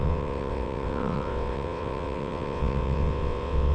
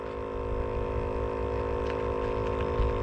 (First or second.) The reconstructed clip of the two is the first